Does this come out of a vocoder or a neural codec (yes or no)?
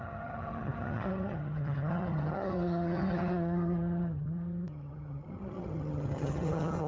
yes